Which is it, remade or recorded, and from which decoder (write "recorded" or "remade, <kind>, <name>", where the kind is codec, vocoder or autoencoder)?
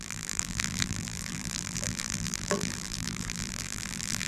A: remade, vocoder, BigVGAN v2